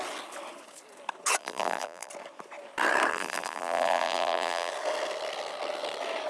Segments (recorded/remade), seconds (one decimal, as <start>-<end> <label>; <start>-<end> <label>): 0.0-1.4 recorded; 1.4-2.1 remade; 2.1-3.1 recorded; 3.1-4.7 remade; 4.7-6.3 recorded